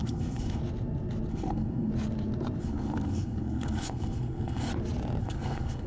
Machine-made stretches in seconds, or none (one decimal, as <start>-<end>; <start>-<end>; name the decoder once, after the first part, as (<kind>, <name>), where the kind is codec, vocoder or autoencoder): 0.0-0.6 (codec, SNAC); 1.3-1.9; 2.6-4.7; 5.2-5.9